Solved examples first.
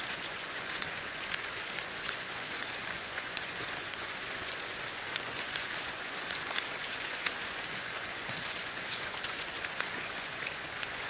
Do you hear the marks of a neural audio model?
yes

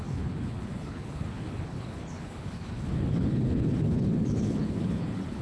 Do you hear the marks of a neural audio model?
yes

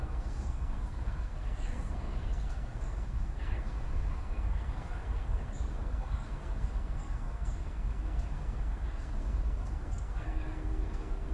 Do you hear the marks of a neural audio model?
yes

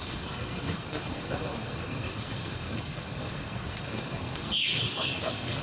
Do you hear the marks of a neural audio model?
yes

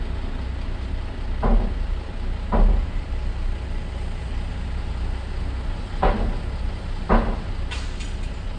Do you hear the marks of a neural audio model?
no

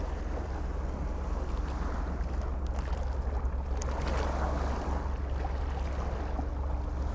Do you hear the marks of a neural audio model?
no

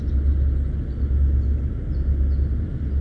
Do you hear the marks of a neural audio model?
no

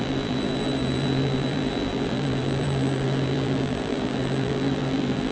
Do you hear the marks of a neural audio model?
yes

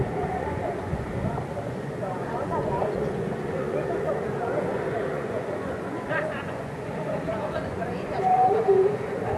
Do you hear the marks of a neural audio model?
yes